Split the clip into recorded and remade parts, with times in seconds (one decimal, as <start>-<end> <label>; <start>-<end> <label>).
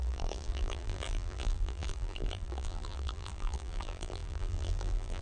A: 0.0-5.2 remade